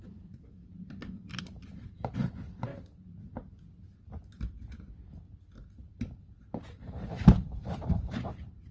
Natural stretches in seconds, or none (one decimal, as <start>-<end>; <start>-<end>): 0.6-1.4; 2.7-5.9